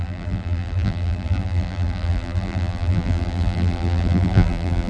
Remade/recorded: remade